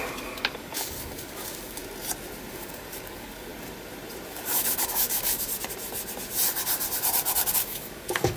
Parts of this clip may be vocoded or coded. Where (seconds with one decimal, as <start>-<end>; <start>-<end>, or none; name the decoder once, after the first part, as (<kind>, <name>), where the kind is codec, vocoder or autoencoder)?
0.0-1.8 (codec, DAC); 2.5-3.5; 4.3-5.5; 7.5-8.4